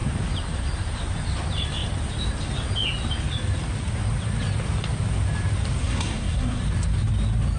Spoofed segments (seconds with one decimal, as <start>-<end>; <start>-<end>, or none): 5.8-6.6